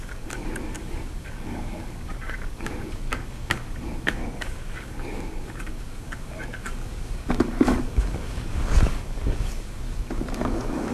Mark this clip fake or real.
fake